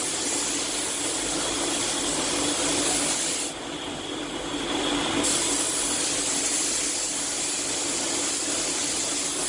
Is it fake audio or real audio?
real